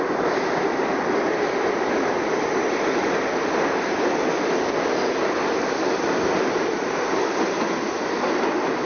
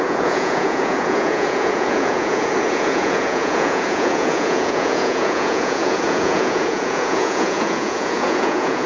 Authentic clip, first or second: first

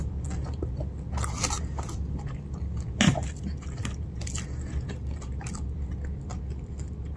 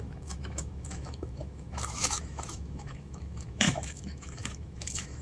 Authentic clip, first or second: first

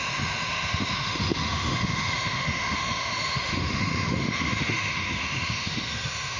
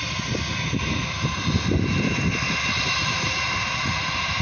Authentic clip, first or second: second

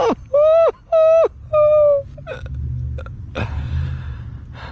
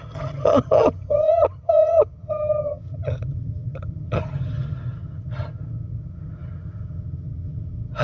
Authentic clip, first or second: first